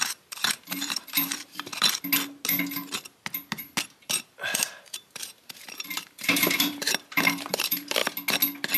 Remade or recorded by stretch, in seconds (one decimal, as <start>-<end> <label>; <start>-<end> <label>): 0.0-1.7 remade; 1.7-4.1 recorded; 4.1-8.0 remade; 8.0-8.8 recorded